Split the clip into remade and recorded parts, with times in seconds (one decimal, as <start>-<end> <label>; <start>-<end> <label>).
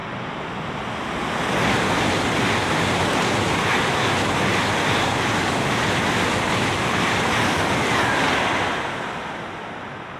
0.0-10.2 recorded